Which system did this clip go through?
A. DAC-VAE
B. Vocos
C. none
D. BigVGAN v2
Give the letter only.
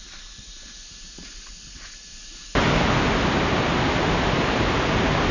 C